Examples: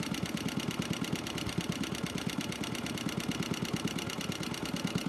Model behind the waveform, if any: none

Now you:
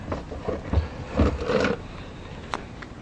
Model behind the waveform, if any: none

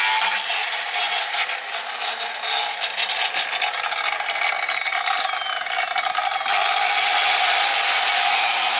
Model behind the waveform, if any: none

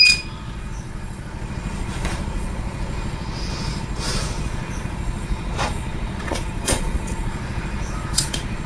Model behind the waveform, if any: vocoder, Vocos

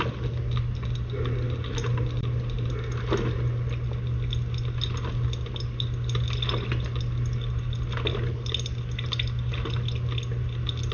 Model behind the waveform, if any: none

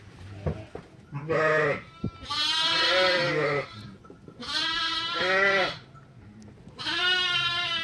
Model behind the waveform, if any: none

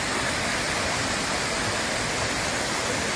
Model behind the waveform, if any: none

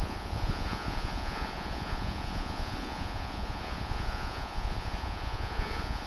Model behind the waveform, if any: vocoder, Vocos